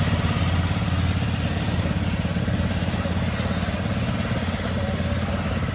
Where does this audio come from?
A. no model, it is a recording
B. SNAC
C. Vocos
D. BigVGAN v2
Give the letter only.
A